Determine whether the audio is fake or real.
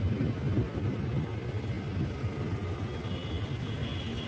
real